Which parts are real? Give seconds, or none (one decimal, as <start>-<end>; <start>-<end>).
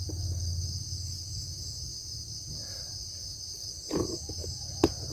0.0-5.1